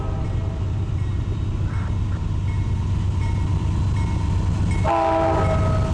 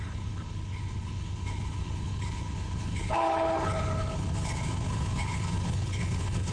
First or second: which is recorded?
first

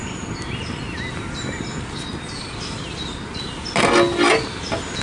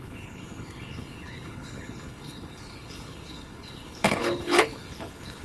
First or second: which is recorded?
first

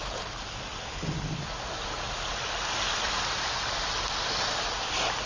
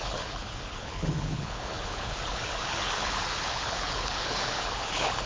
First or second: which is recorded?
first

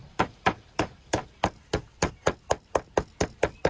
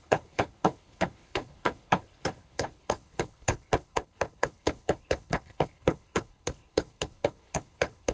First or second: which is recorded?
first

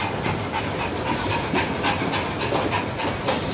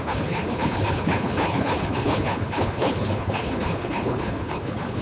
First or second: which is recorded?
first